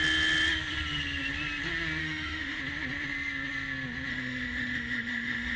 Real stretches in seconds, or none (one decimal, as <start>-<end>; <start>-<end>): 0.0-2.0; 2.6-4.1